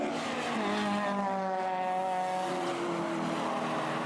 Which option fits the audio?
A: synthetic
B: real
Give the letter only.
B